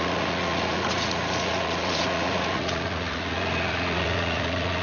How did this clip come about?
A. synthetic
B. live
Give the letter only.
A